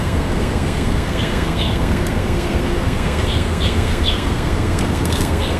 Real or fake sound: fake